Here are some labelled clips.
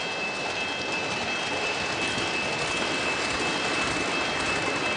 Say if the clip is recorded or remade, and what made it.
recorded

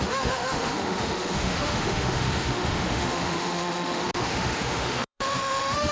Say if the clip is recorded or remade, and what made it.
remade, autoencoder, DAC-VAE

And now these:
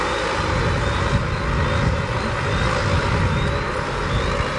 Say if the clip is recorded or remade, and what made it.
recorded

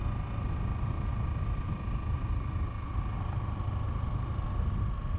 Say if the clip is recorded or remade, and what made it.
recorded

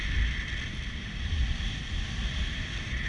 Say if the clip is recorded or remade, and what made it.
recorded